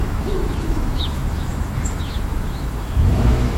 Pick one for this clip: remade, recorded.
remade